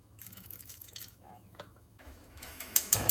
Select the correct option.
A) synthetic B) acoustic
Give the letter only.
A